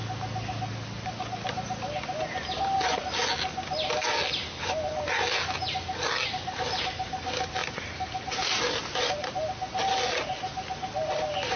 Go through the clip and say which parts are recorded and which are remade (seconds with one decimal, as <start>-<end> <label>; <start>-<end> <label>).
0.0-11.6 recorded